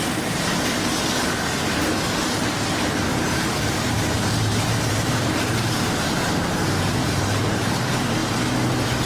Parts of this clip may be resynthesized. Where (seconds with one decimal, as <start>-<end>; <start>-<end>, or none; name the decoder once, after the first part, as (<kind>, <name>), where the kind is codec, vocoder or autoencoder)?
3.1-7.7 (vocoder, BigVGAN v2)

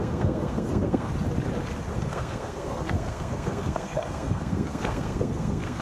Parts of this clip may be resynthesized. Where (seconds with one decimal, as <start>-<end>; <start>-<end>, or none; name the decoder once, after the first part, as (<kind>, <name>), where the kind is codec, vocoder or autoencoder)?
0.0-1.1 (codec, SNAC); 1.9-5.8

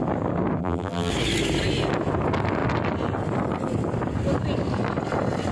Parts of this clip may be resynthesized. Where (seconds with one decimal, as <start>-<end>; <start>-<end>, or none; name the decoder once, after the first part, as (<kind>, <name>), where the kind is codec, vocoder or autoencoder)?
0.6-1.1 (vocoder, BigVGAN v2)

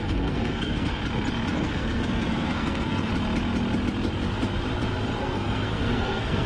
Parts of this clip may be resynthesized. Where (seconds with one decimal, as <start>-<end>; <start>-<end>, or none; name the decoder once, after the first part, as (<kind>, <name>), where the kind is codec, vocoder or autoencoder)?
0.0-1.0 (codec, SNAC); 1.5-3.1; 5.2-6.5